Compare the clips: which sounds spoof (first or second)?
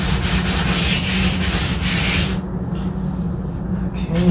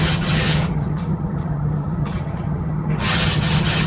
second